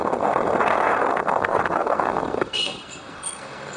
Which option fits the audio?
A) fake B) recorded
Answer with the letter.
A